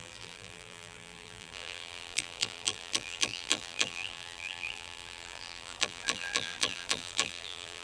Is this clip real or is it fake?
fake